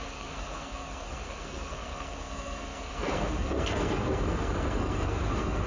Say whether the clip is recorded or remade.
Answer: remade